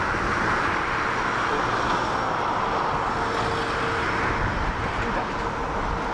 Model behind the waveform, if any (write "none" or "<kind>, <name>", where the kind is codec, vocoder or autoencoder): none